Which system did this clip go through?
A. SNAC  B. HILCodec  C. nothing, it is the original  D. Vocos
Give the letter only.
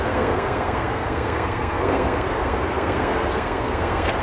A